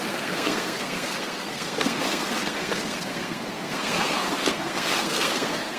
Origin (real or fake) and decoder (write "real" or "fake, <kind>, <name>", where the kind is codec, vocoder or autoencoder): fake, codec, SNAC